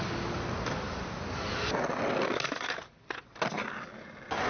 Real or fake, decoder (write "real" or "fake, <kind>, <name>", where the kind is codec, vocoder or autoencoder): real